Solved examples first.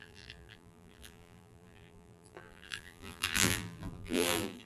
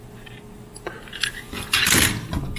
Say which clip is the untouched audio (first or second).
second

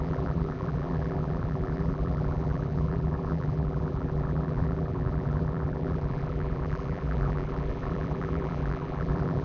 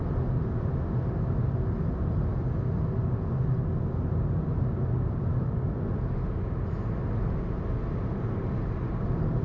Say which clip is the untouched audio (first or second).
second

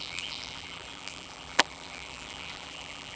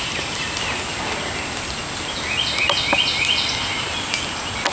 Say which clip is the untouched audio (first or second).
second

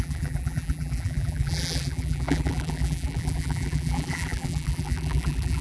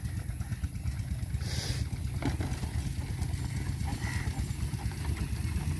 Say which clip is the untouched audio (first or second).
second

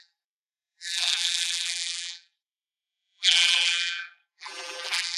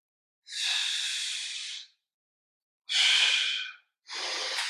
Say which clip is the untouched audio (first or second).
second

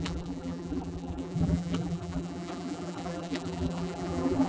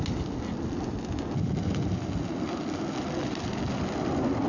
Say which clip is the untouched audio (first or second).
second